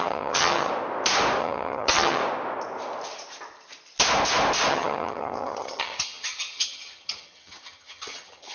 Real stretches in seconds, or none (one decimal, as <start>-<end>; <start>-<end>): 0.7-1.4; 2.2-4.7